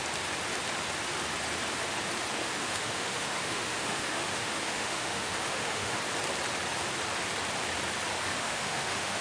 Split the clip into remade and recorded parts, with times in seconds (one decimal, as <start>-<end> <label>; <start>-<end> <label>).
0.0-2.4 recorded; 2.4-6.0 remade; 6.0-8.3 recorded; 8.3-9.2 remade